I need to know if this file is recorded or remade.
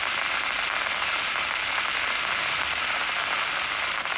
recorded